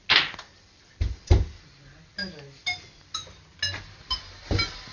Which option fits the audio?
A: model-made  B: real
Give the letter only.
B